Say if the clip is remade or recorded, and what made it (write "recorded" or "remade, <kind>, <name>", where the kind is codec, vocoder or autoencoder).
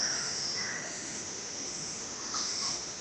remade, autoencoder, DAC-VAE